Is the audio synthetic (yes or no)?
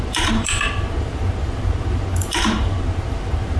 yes